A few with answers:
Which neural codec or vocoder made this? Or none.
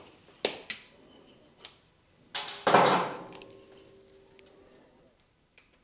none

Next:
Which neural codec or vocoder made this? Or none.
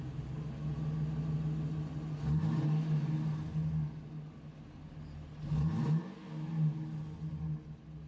none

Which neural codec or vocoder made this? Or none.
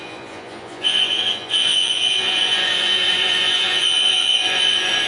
vocoder, Vocos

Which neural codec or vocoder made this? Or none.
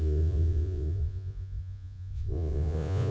vocoder, Vocos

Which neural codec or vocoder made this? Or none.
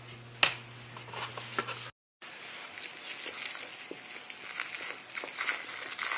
none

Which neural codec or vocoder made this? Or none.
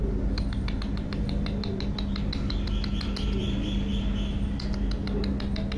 none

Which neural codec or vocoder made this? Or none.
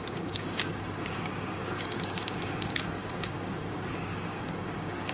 codec, DAC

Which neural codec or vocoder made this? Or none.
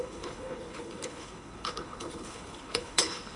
codec, HILCodec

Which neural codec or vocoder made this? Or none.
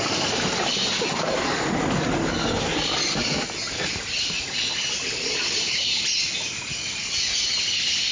none